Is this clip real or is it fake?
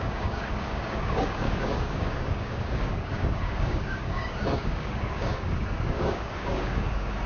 fake